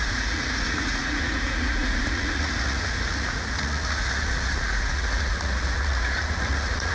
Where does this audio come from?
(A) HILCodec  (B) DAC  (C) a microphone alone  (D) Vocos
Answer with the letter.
D